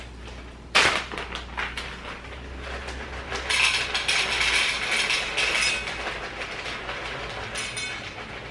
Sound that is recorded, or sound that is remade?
recorded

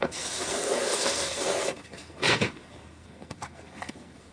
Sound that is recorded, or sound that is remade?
remade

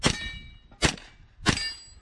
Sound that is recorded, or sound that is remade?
recorded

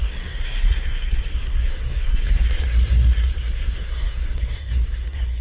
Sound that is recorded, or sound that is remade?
remade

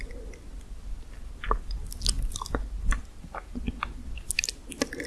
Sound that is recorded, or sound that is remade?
recorded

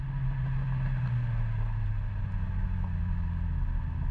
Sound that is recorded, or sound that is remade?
recorded